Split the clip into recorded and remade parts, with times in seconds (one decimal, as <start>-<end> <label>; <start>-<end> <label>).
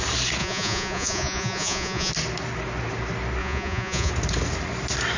0.0-0.4 recorded; 0.4-2.1 remade; 2.1-3.4 recorded; 3.4-4.1 remade; 4.1-5.2 recorded